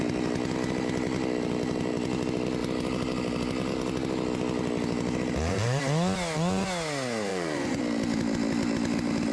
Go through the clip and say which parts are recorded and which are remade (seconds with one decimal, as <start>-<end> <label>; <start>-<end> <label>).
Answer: 0.0-7.3 recorded; 7.3-7.8 remade; 7.8-9.3 recorded